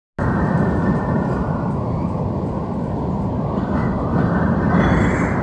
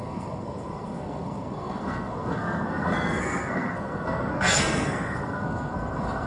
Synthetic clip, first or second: second